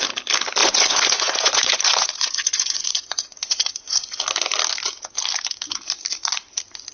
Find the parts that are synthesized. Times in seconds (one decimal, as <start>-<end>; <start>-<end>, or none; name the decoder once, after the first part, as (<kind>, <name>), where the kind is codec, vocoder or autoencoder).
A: 0.6-4.2 (vocoder, Vocos)